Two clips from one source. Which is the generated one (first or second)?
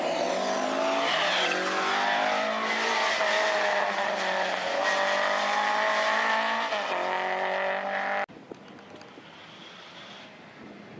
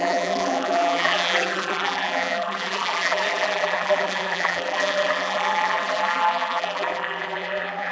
second